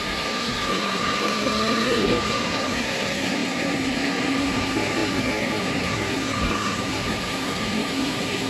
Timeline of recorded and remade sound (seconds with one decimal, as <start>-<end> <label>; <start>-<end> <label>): 0.0-8.5 remade